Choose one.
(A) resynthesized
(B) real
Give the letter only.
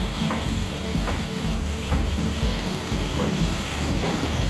A